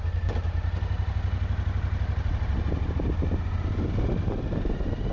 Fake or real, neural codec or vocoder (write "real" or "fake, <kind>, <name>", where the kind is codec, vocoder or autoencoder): real